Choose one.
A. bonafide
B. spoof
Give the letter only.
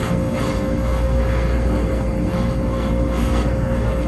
B